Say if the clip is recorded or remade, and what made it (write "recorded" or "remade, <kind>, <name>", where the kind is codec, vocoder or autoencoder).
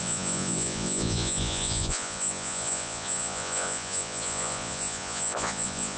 remade, vocoder, Vocos